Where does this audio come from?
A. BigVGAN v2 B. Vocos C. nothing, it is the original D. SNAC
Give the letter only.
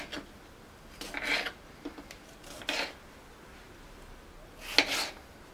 C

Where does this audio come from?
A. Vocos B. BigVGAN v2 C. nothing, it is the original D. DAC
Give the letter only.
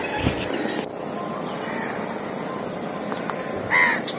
C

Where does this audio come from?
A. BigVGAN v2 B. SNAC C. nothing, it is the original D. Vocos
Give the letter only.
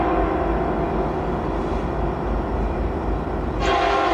C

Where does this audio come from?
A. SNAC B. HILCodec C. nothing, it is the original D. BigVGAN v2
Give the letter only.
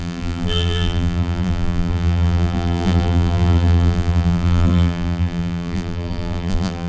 D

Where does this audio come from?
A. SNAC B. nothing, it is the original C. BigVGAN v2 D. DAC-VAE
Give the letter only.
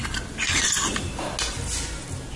B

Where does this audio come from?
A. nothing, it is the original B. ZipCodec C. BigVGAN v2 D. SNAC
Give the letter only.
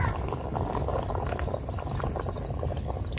C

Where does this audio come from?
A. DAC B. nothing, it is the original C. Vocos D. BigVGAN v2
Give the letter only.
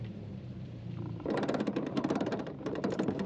D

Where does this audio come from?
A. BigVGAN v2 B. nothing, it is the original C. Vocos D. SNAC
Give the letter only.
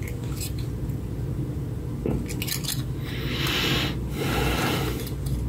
B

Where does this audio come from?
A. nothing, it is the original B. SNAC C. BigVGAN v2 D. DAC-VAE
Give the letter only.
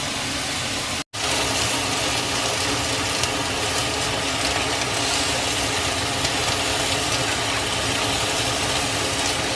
A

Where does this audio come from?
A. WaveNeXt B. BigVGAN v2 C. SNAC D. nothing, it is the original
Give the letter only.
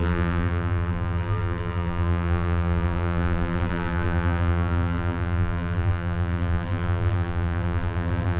B